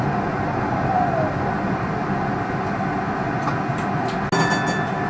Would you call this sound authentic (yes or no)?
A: yes